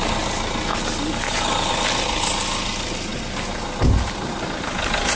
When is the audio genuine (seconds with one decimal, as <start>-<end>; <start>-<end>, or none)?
0.0-5.2